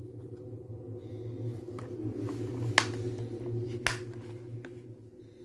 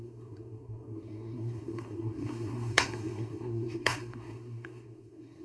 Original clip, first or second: first